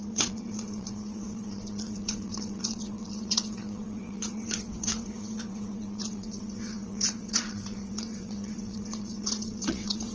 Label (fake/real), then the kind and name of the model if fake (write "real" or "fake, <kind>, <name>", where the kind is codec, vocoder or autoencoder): fake, vocoder, WaveNeXt